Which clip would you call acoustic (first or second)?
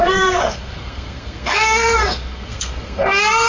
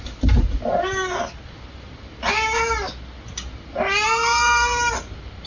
second